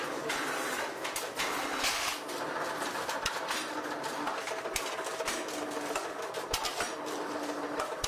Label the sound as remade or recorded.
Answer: recorded